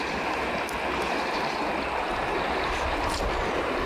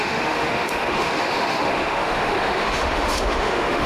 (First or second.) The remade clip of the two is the second